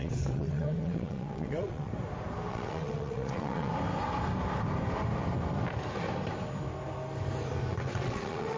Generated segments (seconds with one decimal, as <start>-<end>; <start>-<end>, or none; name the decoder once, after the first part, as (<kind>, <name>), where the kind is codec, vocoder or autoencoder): 0.0-1.9 (vocoder, WaveNeXt); 2.5-3.7; 7.7-8.6

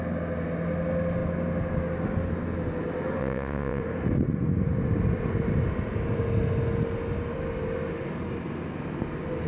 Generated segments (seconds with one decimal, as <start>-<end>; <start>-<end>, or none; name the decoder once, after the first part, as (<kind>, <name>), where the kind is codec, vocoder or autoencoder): 3.2-3.8 (vocoder, WaveNeXt)

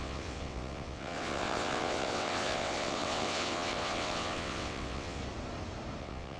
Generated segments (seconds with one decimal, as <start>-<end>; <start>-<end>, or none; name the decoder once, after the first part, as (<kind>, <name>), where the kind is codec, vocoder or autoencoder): 0.0-5.2 (vocoder, WaveNeXt); 6.0-6.4

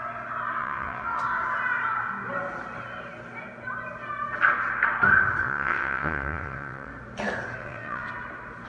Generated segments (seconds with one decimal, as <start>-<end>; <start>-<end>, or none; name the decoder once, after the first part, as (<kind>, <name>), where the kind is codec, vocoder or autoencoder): 0.6-1.2 (vocoder, WaveNeXt); 5.4-6.9; 7.6-8.1

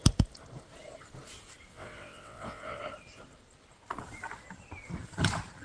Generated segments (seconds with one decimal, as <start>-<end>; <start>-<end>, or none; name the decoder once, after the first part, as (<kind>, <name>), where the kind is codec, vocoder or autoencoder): 1.7-2.8 (vocoder, WaveNeXt)

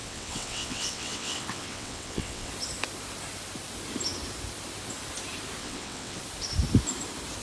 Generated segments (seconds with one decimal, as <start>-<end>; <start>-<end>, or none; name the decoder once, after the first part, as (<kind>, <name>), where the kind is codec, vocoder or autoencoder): 0.0-2.5 (vocoder, WaveNeXt); 5.6-6.2

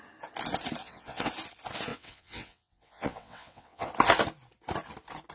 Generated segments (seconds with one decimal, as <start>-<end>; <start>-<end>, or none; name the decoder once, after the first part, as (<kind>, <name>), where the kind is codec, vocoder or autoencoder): 0.8-1.3 (vocoder, WaveNeXt); 1.9-3.9